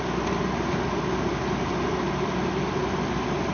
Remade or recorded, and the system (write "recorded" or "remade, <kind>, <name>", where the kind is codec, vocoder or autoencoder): recorded